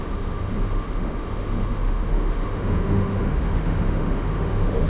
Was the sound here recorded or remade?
remade